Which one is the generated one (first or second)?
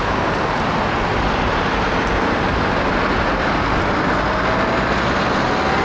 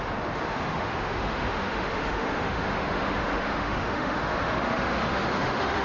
second